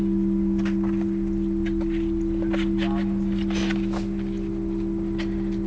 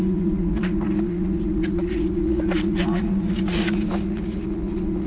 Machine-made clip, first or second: second